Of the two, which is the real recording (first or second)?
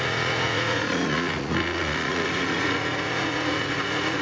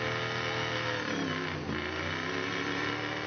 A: second